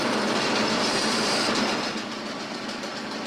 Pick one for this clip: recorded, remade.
remade